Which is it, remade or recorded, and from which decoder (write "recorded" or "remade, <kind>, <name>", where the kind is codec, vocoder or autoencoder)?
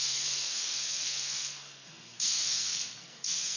remade, codec, SNAC